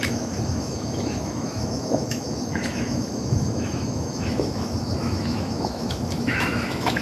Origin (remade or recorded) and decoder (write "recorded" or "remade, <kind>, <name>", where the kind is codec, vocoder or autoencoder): remade, autoencoder, DAC-VAE